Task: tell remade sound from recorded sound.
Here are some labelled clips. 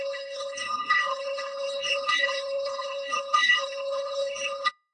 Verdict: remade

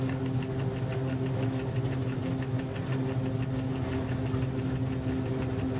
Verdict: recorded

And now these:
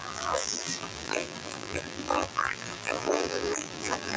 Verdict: remade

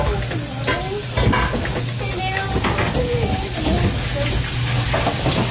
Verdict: recorded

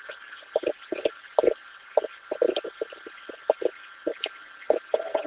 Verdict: recorded